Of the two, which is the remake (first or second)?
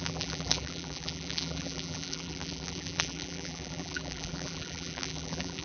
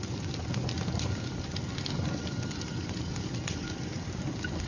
first